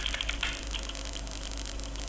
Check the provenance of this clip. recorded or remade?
recorded